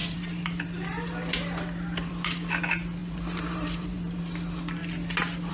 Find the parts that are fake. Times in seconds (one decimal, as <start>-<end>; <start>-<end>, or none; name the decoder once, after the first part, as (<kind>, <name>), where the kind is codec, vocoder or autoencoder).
0.0-2.1 (vocoder, BigVGAN v2); 3.0-4.2